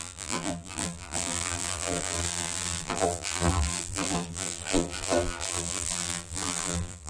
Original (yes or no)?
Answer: no